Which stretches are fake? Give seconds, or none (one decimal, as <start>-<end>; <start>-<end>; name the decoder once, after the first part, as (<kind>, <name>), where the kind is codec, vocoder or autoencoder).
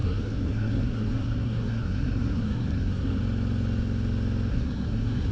0.0-3.2 (codec, SNAC); 4.5-5.3